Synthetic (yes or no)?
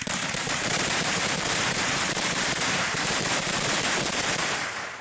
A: yes